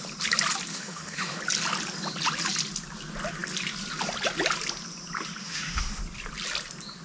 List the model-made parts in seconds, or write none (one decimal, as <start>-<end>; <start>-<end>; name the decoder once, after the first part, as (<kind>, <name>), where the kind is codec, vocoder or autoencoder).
0.7-1.4 (autoencoder, DAC-VAE); 5.4-6.0